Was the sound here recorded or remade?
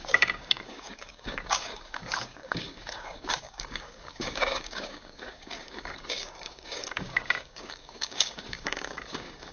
remade